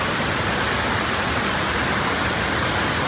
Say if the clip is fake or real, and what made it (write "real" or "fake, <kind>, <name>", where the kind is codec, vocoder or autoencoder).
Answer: real